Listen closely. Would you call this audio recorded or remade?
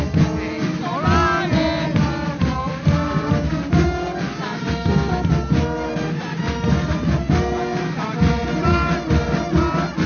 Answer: recorded